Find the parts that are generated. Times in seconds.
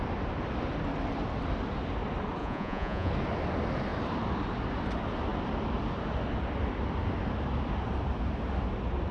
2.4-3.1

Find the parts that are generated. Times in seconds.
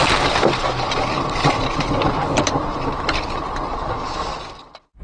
3.7-4.4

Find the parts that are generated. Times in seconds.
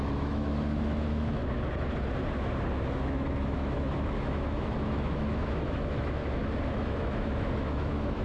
0.0-1.4; 2.9-6.2; 6.7-8.2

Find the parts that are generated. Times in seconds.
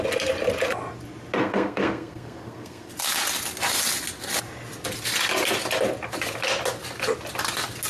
1.4-2.9